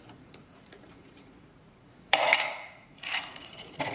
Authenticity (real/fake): fake